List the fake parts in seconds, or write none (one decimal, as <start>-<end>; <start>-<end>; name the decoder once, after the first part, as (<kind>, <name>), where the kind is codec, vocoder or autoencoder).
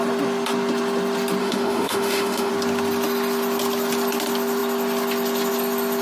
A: 1.4-2.5 (autoencoder, DAC-VAE)